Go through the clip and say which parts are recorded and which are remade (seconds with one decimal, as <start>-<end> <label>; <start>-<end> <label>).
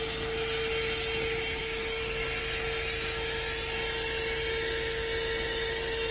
0.0-6.1 recorded